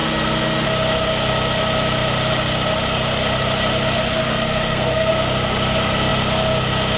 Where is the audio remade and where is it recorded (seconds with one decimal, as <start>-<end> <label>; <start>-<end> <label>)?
0.0-4.2 recorded; 4.2-5.1 remade; 5.1-7.0 recorded